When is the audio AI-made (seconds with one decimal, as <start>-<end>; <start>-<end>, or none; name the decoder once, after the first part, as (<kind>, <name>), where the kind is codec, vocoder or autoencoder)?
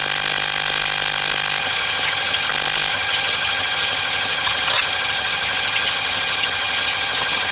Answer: 1.6-2.5 (vocoder, HiFi-GAN); 2.9-7.5